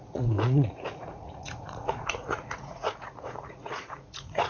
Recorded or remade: remade